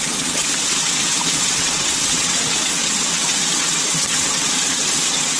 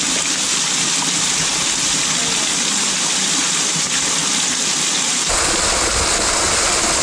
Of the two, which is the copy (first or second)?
first